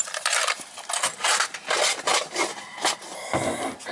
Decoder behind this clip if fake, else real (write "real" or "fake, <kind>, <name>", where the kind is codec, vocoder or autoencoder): real